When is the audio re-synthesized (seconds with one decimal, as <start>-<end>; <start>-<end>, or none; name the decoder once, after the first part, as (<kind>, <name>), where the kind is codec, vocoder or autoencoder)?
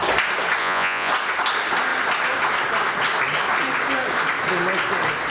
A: 0.6-1.1 (vocoder, Vocos)